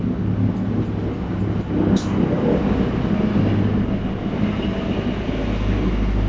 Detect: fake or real real